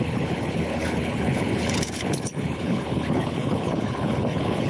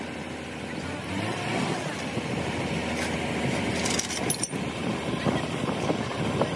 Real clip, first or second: second